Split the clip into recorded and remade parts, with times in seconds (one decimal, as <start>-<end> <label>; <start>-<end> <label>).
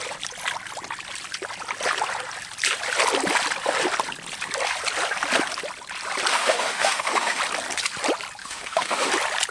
0.0-6.3 recorded; 6.3-7.4 remade; 7.4-8.4 recorded; 8.4-9.1 remade; 9.1-9.5 recorded